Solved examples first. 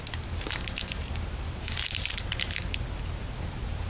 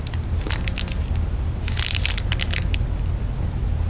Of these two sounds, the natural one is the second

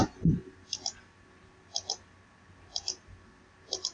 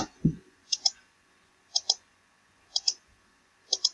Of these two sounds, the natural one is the first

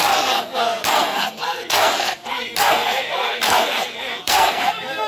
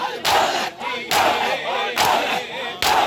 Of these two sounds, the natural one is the second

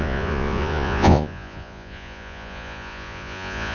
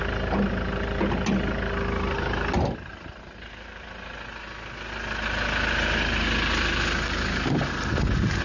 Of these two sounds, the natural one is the second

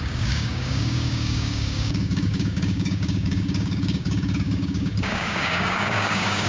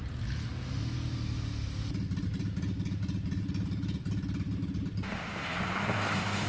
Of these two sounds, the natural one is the second